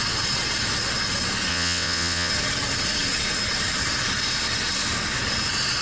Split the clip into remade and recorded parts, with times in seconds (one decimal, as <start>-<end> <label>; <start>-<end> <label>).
0.0-1.5 recorded; 1.5-2.3 remade; 2.3-5.8 recorded